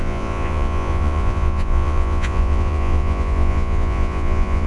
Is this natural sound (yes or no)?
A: no